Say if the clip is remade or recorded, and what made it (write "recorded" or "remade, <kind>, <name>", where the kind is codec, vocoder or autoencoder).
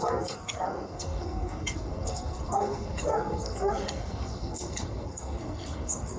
remade, codec, SNAC